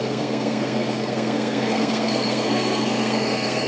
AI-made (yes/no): yes